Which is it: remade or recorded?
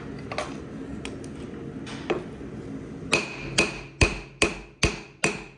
recorded